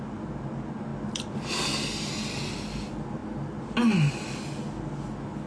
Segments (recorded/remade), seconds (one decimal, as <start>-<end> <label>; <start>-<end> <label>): 0.0-5.5 recorded